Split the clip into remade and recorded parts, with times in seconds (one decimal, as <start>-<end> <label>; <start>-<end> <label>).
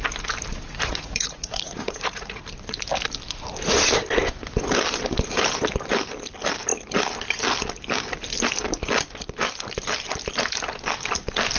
0.0-0.5 recorded; 0.5-2.4 remade; 2.4-11.6 recorded